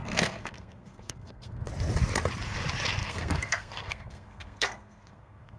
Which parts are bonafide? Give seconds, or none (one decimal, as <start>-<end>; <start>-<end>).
1.7-3.0